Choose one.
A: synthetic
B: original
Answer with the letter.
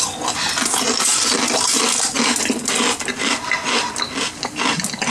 B